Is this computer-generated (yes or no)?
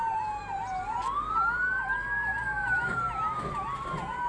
no